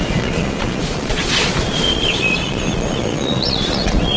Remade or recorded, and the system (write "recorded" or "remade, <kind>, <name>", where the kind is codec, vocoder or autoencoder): remade, vocoder, Vocos